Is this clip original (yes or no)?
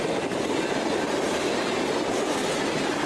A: yes